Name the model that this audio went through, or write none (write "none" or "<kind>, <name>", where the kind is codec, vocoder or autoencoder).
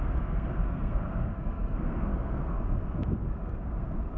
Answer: codec, SNAC